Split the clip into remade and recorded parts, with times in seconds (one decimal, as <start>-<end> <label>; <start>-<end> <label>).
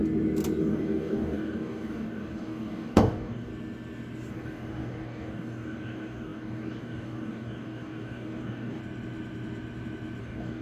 0.0-0.6 recorded; 0.6-3.5 remade; 3.5-4.3 recorded; 4.3-8.8 remade; 8.8-10.2 recorded; 10.2-10.6 remade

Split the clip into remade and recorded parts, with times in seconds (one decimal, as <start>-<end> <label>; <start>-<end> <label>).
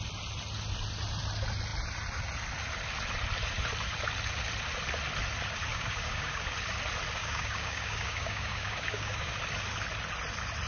0.0-5.7 recorded; 5.7-6.3 remade; 6.3-7.2 recorded; 7.2-9.3 remade; 9.3-10.7 recorded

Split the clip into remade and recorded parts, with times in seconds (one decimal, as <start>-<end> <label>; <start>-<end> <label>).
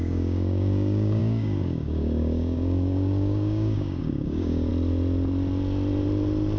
0.0-4.7 remade; 4.7-6.6 recorded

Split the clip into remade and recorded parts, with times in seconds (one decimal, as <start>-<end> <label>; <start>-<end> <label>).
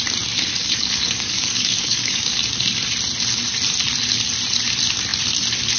0.0-0.6 recorded; 0.6-2.4 remade; 2.4-5.8 recorded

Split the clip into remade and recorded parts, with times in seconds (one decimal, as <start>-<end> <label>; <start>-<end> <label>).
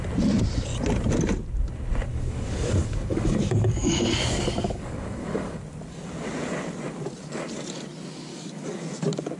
0.0-2.1 recorded; 2.1-5.6 remade; 5.6-8.3 recorded; 8.3-8.8 remade; 8.8-9.4 recorded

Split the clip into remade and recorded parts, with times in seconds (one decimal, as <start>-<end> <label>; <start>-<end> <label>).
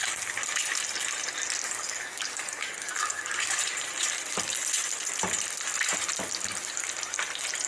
0.0-1.6 recorded; 1.6-3.6 remade; 3.6-7.7 recorded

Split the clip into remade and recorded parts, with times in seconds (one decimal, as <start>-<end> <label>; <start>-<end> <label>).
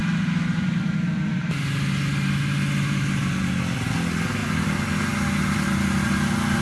0.0-6.6 recorded